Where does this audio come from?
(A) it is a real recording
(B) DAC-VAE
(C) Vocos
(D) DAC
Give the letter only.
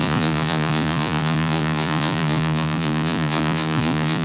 C